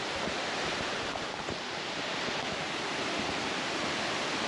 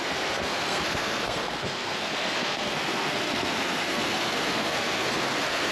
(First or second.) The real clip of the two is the first